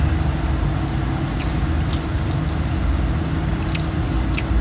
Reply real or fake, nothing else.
real